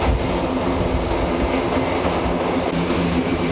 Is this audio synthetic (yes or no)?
no